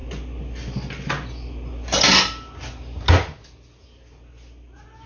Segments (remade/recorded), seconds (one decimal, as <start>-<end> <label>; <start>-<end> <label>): 0.0-5.1 recorded